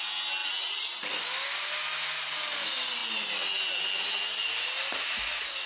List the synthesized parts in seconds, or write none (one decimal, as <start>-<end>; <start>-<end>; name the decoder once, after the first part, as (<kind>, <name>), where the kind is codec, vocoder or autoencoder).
none